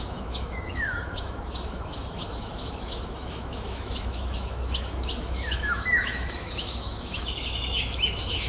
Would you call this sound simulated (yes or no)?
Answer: yes